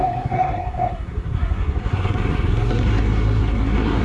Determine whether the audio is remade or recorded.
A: remade